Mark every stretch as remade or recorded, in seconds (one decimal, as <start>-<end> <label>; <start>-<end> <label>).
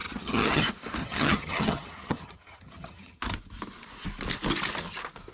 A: 0.0-0.6 remade; 0.6-1.0 recorded; 1.0-3.2 remade; 3.2-5.3 recorded